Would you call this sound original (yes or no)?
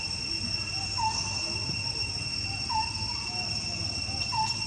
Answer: yes